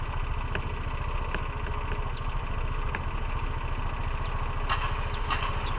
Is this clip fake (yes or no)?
no